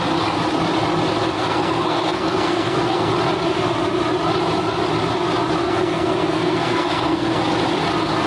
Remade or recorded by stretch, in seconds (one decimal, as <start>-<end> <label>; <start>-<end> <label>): 0.0-1.3 recorded; 1.3-3.1 remade; 3.1-5.6 recorded; 5.6-7.4 remade; 7.4-8.3 recorded